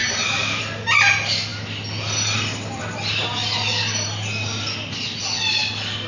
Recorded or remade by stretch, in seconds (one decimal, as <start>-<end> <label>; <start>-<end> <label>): 0.0-6.1 recorded